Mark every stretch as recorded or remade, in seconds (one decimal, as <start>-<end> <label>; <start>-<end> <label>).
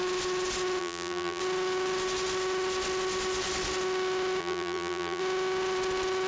0.0-0.8 recorded; 0.8-1.4 remade; 1.4-4.4 recorded; 4.4-5.2 remade; 5.2-6.3 recorded